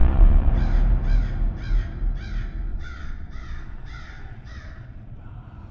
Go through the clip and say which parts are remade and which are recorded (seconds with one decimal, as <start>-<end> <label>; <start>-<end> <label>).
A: 0.0-0.5 remade; 0.5-2.7 recorded; 2.7-5.3 remade; 5.3-5.7 recorded